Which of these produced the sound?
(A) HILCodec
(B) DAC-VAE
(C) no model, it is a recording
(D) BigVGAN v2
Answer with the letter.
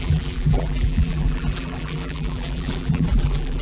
D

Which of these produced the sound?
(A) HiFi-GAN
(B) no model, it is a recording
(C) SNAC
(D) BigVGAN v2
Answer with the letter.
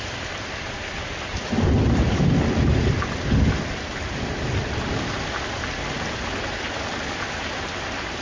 B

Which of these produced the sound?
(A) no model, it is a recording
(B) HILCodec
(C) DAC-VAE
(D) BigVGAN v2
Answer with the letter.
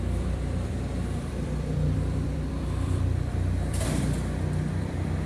D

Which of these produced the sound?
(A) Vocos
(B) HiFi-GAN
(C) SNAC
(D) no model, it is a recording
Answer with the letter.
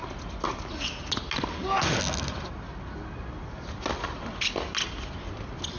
D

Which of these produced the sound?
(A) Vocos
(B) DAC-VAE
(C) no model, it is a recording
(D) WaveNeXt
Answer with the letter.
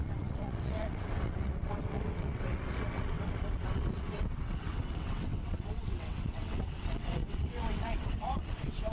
D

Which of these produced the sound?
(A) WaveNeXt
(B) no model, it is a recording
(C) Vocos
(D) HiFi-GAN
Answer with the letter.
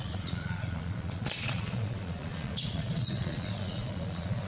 C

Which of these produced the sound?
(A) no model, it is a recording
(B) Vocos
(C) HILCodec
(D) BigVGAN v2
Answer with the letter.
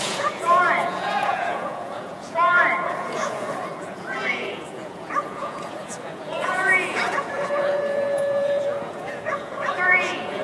B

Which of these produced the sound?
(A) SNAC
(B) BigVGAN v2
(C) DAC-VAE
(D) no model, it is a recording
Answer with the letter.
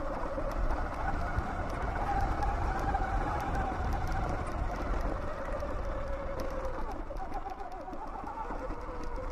D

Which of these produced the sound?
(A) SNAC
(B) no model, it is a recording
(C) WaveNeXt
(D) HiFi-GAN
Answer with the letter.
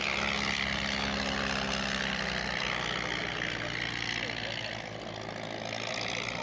B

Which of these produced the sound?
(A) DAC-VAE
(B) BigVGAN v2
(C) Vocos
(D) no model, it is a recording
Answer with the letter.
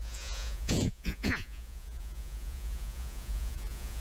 C